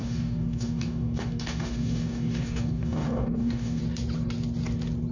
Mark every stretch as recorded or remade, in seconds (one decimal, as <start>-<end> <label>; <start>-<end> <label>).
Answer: 0.0-3.8 remade; 3.8-5.1 recorded

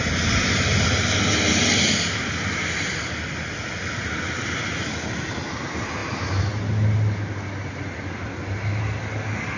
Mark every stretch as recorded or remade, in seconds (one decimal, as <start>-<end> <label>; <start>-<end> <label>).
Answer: 0.0-9.6 recorded

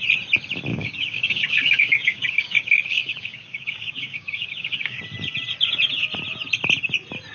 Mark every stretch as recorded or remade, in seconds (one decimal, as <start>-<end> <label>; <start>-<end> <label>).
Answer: 0.0-0.7 recorded; 0.7-5.0 remade; 5.0-7.3 recorded

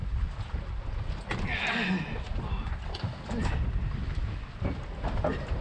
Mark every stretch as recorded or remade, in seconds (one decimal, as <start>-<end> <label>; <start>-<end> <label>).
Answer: 0.0-5.6 recorded

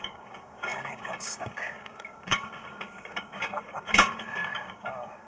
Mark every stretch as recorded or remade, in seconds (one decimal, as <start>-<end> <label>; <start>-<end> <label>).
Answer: 0.0-5.3 remade

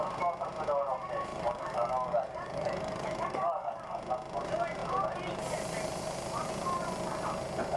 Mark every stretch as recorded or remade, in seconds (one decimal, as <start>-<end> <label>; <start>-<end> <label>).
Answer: 0.0-1.3 recorded; 1.3-4.0 remade; 4.0-7.8 recorded

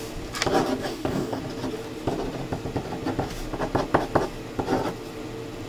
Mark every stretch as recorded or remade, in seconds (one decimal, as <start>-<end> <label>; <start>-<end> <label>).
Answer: 0.0-0.8 recorded; 0.8-1.4 remade; 1.4-5.7 recorded

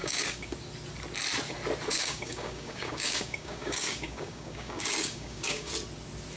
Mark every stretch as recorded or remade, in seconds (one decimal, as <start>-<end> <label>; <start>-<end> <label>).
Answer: 0.0-0.5 remade; 0.5-1.9 recorded; 1.9-5.7 remade; 5.7-6.4 recorded